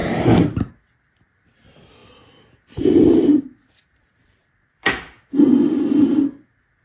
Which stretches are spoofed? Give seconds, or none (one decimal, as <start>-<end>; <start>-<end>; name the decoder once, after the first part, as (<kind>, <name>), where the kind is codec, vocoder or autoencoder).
2.0-5.8 (vocoder, BigVGAN v2)